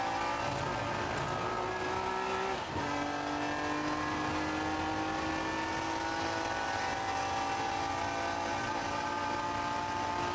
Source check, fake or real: real